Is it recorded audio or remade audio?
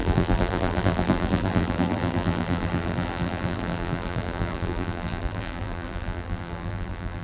remade